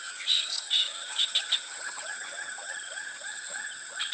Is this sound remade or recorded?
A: remade